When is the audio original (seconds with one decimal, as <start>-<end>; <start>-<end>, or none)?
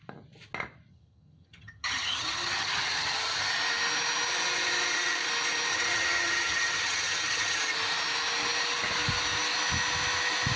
0.0-0.9; 3.5-5.7; 7.6-10.6